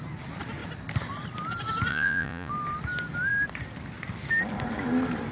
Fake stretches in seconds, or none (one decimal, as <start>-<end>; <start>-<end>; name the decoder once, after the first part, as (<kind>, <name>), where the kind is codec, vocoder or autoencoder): 1.9-2.5 (vocoder, Vocos)